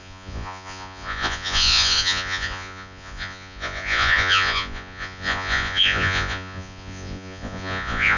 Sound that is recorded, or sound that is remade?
remade